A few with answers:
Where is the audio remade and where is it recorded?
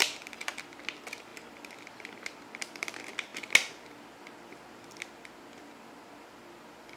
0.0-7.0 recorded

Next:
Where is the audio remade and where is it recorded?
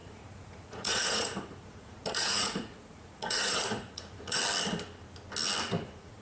0.0-4.4 remade; 4.4-5.8 recorded; 5.8-6.2 remade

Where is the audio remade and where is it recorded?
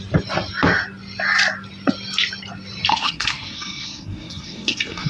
0.0-2.9 recorded; 2.9-5.1 remade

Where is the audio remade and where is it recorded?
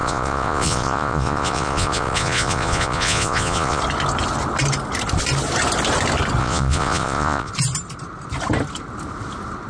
0.0-3.8 remade; 3.8-6.4 recorded; 6.4-7.5 remade; 7.5-9.7 recorded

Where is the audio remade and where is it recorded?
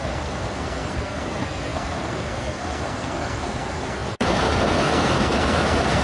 0.0-6.0 remade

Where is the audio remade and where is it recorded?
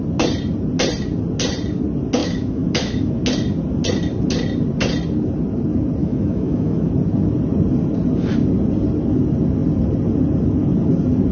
0.0-2.2 recorded; 2.2-3.1 remade; 3.1-6.0 recorded; 6.0-6.9 remade; 6.9-11.3 recorded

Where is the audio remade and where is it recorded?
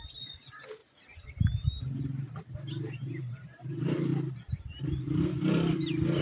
0.0-6.2 recorded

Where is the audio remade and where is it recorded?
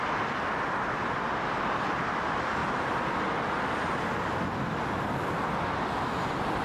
0.0-6.6 recorded